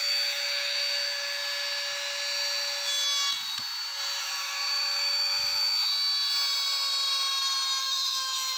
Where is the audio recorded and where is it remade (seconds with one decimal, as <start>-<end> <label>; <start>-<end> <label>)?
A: 0.0-1.4 remade; 1.4-4.2 recorded; 4.2-5.9 remade; 5.9-7.8 recorded; 7.8-8.6 remade